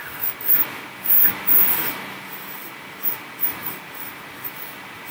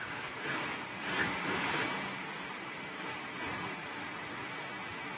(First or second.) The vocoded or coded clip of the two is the second